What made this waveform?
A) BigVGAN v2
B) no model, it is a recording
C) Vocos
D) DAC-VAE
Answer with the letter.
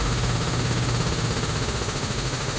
D